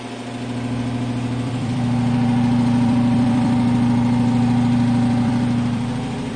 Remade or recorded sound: remade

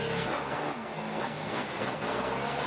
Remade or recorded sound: remade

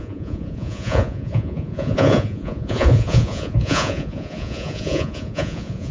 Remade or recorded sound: remade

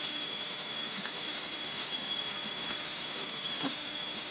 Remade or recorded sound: remade